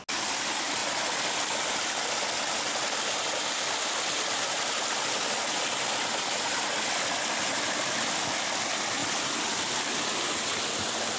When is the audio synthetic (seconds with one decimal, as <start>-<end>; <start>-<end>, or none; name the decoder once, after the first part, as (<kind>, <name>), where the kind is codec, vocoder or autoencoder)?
none